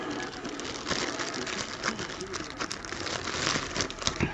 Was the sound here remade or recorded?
recorded